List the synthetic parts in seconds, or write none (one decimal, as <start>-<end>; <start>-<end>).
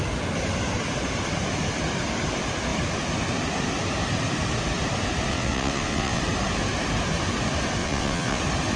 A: 5.3-6.2; 7.8-8.4